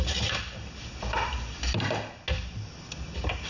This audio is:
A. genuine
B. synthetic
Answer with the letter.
A